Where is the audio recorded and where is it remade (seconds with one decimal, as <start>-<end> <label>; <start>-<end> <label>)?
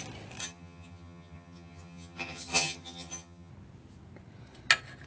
0.0-0.4 recorded; 0.4-3.5 remade; 3.5-5.1 recorded